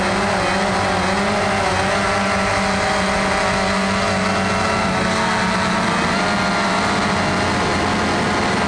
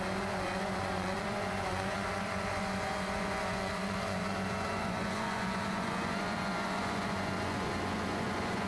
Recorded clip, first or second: first